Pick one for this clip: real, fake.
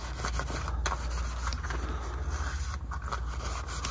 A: real